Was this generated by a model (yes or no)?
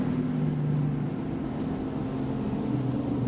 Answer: no